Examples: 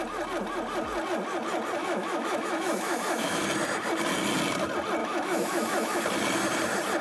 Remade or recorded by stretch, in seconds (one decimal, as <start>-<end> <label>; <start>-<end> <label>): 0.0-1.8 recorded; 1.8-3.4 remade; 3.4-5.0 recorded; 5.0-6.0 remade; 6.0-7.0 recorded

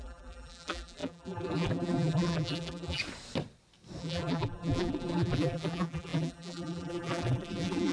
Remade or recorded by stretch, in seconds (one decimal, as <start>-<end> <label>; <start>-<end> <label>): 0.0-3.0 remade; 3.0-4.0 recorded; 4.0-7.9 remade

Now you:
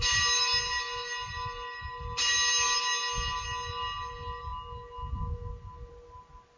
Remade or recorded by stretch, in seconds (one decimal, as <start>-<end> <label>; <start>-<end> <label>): 0.0-6.6 recorded

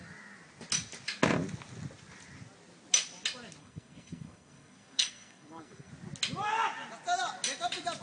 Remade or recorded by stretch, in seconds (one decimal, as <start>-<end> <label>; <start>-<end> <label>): 0.0-3.6 recorded; 3.6-5.9 remade; 5.9-8.0 recorded